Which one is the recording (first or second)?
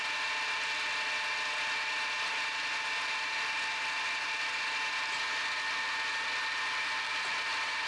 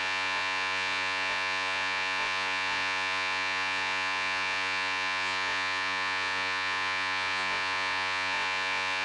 first